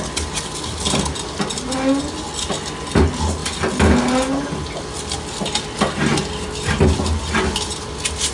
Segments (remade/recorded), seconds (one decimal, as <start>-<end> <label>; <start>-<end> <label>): 0.0-8.3 recorded